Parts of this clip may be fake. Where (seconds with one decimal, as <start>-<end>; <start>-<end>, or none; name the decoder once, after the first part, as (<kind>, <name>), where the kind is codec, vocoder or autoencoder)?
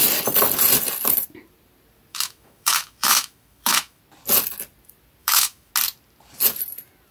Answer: 2.1-4.0 (autoencoder, DAC-VAE); 5.2-5.7